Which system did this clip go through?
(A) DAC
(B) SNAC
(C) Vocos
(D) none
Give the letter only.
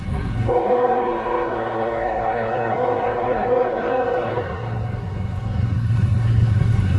B